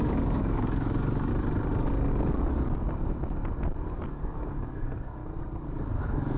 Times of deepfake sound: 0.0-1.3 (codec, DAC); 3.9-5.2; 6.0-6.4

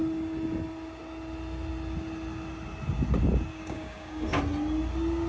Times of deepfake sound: 3.5-4.4 (codec, DAC)

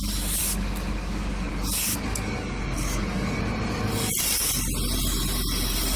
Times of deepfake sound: 0.4-1.5 (codec, DAC); 1.9-3.4